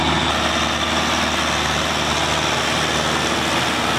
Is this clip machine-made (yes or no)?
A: no